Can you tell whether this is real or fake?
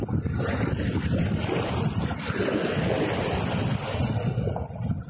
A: real